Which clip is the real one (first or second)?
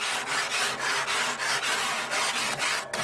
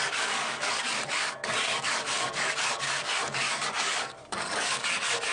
first